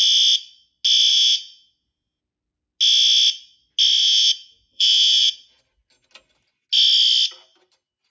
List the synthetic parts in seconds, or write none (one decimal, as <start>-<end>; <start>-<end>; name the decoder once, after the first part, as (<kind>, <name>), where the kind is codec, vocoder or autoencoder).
1.1-2.2 (vocoder, Vocos); 4.0-5.6